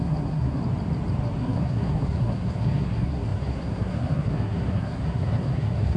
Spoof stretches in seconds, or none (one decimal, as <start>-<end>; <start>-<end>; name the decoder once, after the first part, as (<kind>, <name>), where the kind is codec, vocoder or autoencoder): 0.0-0.6 (codec, SNAC); 1.4-6.0